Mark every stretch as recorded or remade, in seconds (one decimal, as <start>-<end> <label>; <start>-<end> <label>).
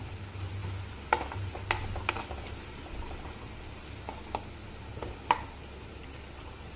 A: 0.0-6.8 recorded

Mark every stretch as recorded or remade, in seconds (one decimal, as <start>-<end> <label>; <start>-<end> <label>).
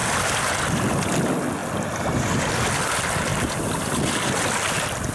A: 0.0-5.1 recorded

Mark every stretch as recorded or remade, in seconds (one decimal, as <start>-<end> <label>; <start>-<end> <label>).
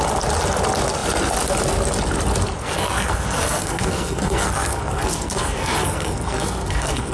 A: 0.0-2.6 recorded; 2.6-7.1 remade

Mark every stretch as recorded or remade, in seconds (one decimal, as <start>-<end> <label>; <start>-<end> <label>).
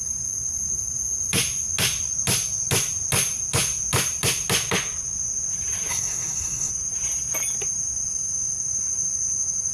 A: 0.0-5.9 recorded; 5.9-6.7 remade; 6.7-9.7 recorded